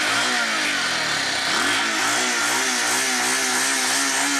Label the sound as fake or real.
real